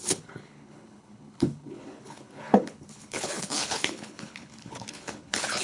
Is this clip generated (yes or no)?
yes